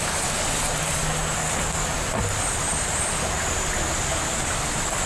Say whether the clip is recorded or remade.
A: recorded